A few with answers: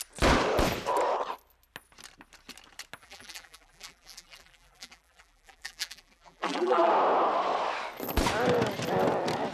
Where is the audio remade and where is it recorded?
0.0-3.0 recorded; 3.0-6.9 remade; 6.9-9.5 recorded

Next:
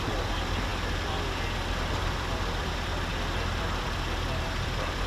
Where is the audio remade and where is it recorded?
0.0-2.9 remade; 2.9-4.4 recorded; 4.4-5.1 remade

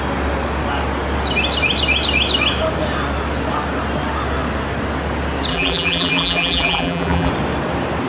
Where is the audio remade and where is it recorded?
0.0-5.5 recorded; 5.5-7.3 remade; 7.3-8.1 recorded

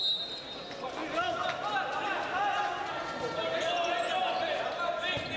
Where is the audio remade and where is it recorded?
0.0-5.4 recorded

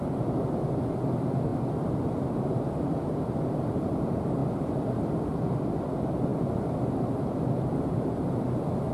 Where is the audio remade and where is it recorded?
0.0-8.9 remade

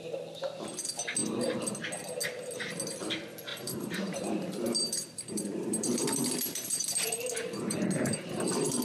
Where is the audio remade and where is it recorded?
0.0-3.5 recorded; 3.5-7.9 remade; 7.9-8.8 recorded